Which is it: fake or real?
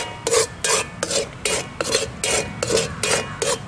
real